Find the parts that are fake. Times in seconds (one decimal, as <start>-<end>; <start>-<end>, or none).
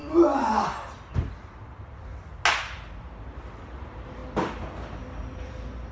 2.9-4.2; 5.0-5.9